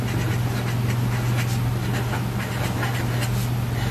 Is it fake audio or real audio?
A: real